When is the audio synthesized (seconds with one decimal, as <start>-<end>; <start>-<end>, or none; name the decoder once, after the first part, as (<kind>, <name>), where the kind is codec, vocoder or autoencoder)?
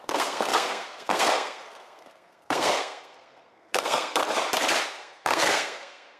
0.0-4.2 (codec, SNAC); 4.8-6.2